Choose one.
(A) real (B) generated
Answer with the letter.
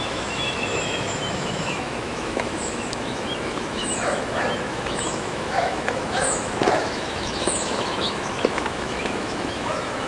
B